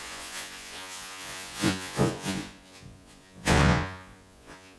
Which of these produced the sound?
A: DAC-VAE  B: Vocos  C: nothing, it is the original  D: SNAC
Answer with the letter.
B